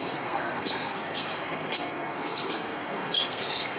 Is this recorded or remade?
remade